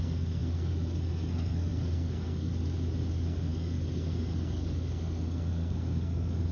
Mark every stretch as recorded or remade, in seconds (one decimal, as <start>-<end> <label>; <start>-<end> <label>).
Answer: 0.0-2.5 remade; 2.5-3.1 recorded; 3.1-6.5 remade